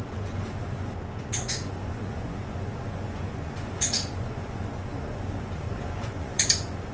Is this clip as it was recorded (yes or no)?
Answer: no